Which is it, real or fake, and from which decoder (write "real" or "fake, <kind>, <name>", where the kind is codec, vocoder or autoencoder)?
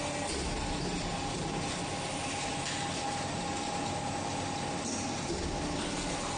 real